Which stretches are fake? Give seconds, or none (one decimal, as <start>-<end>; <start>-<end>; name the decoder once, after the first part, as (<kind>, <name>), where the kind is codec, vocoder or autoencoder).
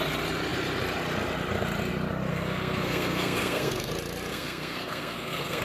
2.3-3.9 (codec, SNAC); 4.3-5.6